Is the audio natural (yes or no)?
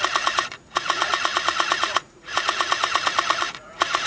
no